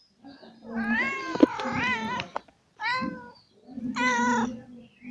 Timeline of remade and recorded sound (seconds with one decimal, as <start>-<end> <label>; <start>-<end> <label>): 0.0-5.1 recorded